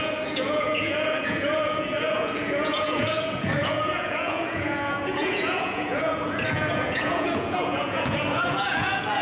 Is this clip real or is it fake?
fake